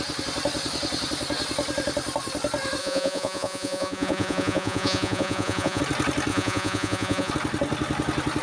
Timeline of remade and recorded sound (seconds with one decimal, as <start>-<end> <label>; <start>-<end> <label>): 0.0-2.8 recorded; 2.8-5.8 remade; 5.8-6.3 recorded; 6.3-7.3 remade; 7.3-8.4 recorded